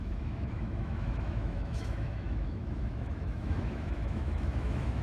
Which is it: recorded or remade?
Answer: remade